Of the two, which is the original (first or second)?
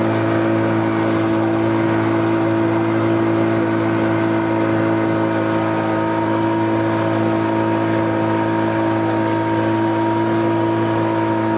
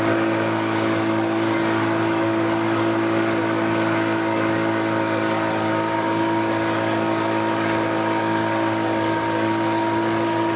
first